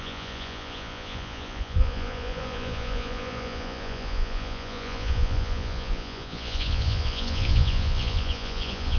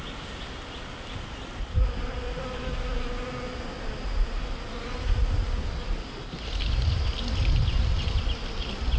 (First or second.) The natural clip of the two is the second